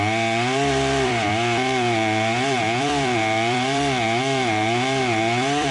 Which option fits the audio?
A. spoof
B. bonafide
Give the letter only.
A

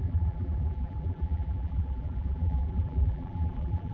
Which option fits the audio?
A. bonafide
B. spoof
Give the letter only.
B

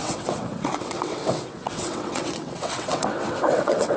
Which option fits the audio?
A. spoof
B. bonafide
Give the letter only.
A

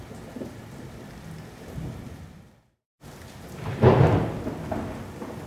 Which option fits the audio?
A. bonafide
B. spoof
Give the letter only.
A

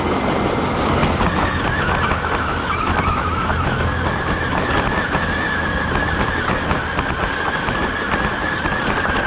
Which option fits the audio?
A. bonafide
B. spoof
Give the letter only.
A